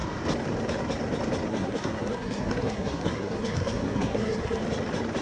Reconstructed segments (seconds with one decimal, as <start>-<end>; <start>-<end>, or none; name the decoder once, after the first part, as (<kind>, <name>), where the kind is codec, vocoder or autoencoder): 1.5-4.6 (codec, SNAC)